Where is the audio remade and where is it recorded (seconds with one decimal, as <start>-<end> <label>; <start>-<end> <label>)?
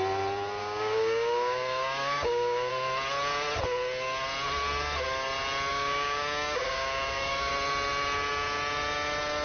0.0-0.6 recorded; 0.6-2.7 remade; 2.7-5.7 recorded; 5.7-7.5 remade; 7.5-9.4 recorded